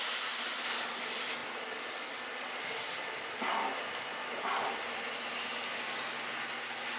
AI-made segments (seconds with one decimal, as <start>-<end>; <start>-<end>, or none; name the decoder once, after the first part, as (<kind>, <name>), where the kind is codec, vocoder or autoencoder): none

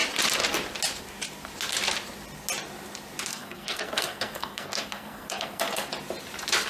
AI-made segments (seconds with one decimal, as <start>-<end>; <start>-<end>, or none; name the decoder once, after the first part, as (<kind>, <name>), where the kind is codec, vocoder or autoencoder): 3.3-5.9 (codec, SNAC)

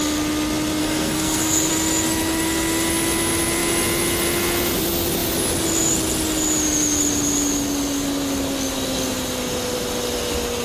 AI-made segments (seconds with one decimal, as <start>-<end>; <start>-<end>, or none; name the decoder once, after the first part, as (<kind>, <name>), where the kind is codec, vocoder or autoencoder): 0.8-1.7 (codec, SNAC)

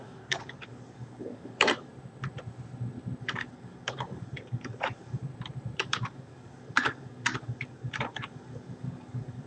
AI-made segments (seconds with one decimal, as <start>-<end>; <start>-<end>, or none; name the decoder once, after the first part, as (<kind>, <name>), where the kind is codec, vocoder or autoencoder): 0.0-1.9 (codec, DAC); 3.2-5.2; 5.8-9.5

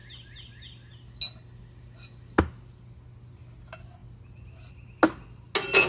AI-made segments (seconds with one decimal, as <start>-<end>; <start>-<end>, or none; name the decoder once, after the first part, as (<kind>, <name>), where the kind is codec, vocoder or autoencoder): none

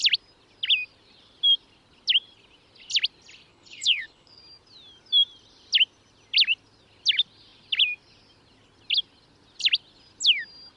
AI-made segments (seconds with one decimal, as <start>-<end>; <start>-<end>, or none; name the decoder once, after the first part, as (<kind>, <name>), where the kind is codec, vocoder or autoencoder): 3.5-4.4 (codec, HILCodec)

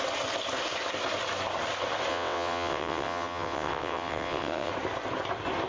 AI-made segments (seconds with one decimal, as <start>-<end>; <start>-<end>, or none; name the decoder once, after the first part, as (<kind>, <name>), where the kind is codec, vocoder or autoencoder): 2.1-4.7 (vocoder, WaveNeXt)